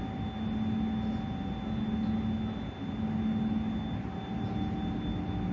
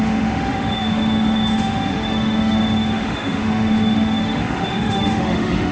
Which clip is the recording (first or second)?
first